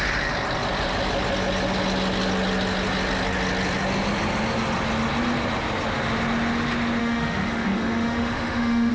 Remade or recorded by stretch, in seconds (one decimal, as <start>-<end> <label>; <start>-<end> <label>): 0.0-7.0 recorded; 7.0-8.9 remade